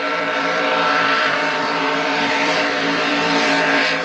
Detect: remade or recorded remade